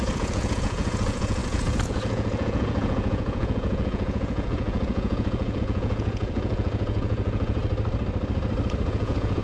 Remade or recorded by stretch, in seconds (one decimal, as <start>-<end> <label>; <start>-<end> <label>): 0.0-7.6 remade; 7.6-8.9 recorded; 8.9-9.4 remade